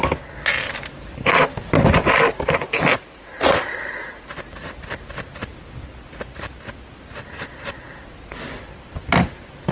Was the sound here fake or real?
real